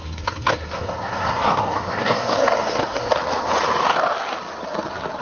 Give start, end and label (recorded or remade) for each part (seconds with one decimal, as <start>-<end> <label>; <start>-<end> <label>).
0.0-3.1 remade; 3.1-5.2 recorded